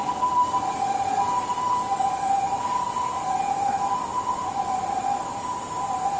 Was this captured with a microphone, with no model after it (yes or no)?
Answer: yes